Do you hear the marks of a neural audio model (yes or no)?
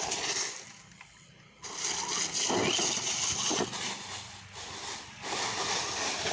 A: no